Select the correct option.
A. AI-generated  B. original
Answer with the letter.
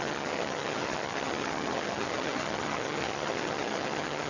A